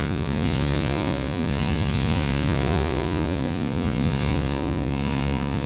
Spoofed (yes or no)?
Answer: yes